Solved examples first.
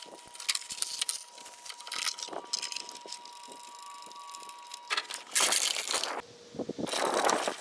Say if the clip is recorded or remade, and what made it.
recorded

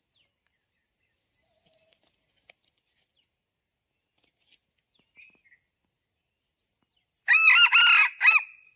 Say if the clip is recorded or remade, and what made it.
recorded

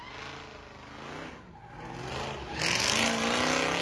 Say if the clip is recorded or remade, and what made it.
recorded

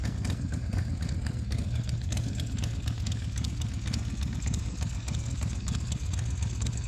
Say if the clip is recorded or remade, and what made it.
remade, codec, SNAC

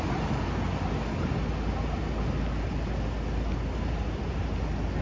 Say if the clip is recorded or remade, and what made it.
recorded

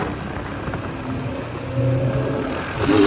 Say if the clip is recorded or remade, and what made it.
recorded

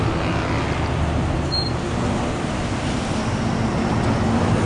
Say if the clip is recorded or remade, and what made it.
recorded